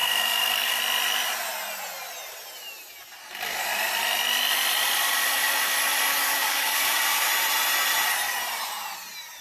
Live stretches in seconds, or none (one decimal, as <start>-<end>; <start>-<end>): 0.8-6.1; 7.3-9.4